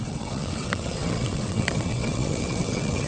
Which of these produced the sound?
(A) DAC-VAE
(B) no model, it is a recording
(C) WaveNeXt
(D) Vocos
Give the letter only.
C